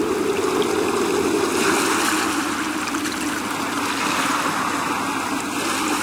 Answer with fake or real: real